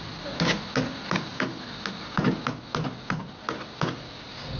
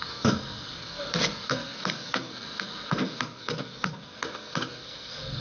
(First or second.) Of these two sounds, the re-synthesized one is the second